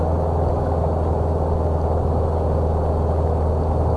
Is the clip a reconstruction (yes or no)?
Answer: no